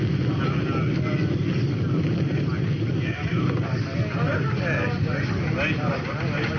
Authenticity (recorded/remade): recorded